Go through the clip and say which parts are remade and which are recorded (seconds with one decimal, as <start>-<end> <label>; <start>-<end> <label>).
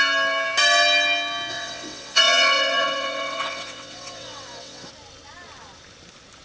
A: 0.0-1.5 recorded; 1.5-4.9 remade; 4.9-6.4 recorded